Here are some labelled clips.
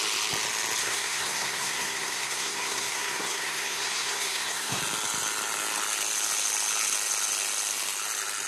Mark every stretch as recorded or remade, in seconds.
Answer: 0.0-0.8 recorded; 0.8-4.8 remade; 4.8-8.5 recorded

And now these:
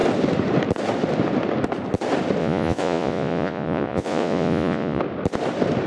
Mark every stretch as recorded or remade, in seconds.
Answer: 0.0-2.4 recorded; 2.4-5.0 remade; 5.0-5.9 recorded

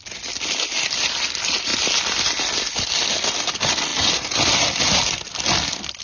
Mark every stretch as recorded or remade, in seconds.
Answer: 0.0-6.0 recorded

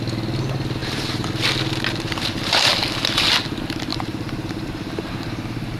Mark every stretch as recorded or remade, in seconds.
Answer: 0.0-0.8 recorded; 0.8-1.3 remade; 1.3-3.9 recorded; 3.9-5.1 remade; 5.1-5.8 recorded

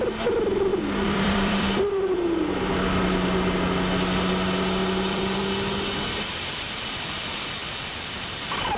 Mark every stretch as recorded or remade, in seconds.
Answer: 0.0-0.7 recorded; 0.7-2.0 remade; 2.0-4.8 recorded; 4.8-5.4 remade; 5.4-8.8 recorded